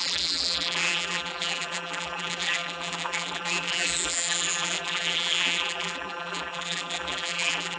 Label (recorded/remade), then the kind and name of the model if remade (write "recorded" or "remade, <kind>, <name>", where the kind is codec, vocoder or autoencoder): remade, vocoder, BigVGAN v2